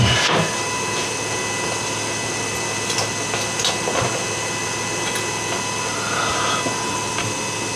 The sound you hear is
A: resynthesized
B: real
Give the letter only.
B